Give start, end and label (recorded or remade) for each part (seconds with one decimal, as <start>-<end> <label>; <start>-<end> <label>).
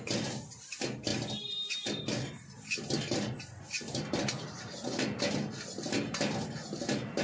0.0-7.2 recorded